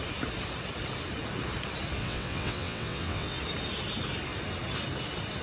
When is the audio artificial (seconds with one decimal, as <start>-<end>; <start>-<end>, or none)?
2.0-3.4